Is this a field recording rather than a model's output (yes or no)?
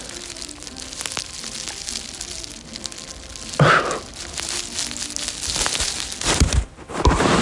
yes